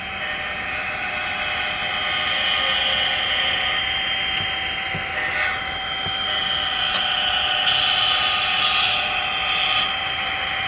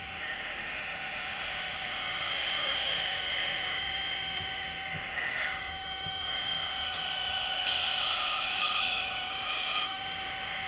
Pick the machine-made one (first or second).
second